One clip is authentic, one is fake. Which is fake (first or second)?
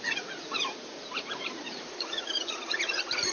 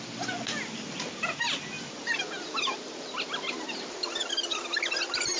first